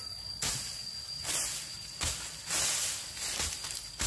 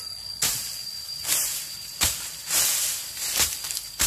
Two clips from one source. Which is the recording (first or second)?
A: first